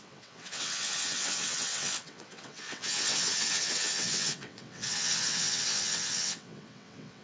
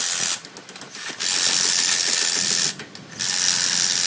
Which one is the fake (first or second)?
first